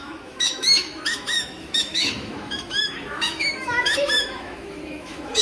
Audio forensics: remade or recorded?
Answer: remade